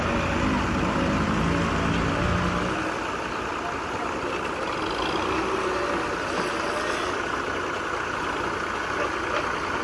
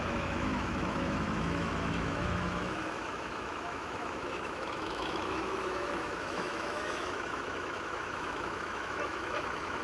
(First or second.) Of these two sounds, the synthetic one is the second